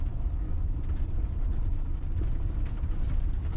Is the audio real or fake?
real